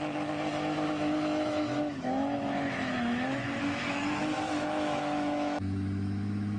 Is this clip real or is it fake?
fake